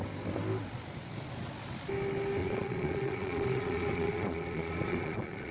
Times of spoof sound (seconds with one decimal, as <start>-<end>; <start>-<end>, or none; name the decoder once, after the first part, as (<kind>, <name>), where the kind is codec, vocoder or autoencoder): 2.4-5.5 (vocoder, Vocos)